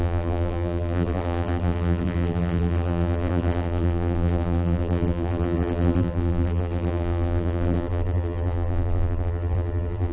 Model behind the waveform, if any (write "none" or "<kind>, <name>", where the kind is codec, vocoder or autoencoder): vocoder, BigVGAN v2